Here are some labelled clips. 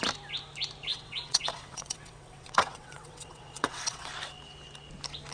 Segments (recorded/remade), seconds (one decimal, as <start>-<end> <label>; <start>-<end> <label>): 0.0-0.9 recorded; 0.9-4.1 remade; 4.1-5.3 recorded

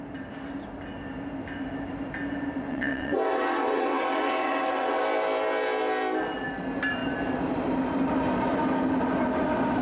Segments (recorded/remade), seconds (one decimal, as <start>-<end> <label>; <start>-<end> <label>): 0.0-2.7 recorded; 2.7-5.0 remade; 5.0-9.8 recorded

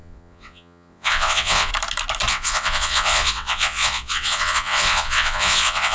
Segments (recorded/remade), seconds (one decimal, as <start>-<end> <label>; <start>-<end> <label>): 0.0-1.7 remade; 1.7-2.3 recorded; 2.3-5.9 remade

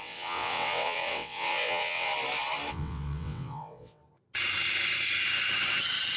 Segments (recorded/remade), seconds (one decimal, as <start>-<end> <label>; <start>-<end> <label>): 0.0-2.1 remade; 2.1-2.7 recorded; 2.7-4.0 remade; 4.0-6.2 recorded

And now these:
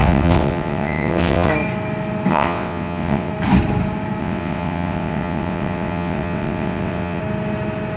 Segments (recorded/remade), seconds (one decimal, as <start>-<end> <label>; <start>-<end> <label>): 0.0-1.5 remade; 1.5-2.3 recorded; 2.3-3.3 remade; 3.3-4.2 recorded; 4.2-7.2 remade; 7.2-8.0 recorded